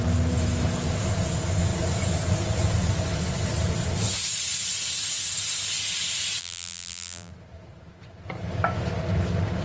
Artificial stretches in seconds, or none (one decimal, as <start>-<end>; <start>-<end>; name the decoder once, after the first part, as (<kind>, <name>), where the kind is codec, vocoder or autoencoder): 6.4-7.3 (vocoder, BigVGAN v2)